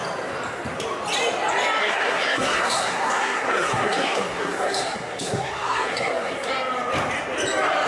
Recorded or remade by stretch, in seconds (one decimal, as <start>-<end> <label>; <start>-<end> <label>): 0.0-1.8 recorded; 1.8-6.5 remade; 6.5-7.9 recorded